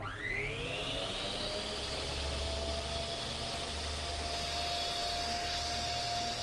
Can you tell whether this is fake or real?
real